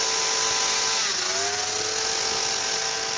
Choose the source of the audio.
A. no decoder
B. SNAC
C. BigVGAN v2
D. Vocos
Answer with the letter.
A